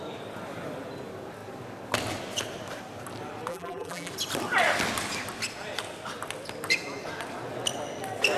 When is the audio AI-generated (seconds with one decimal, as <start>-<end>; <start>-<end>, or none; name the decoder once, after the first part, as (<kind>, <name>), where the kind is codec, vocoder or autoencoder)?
3.5-4.1 (vocoder, BigVGAN v2)